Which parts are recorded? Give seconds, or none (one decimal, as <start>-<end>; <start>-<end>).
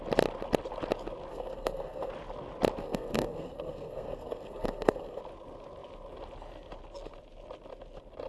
0.0-1.3; 2.1-2.8; 5.2-8.3